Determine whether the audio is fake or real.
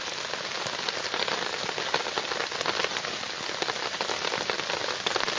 real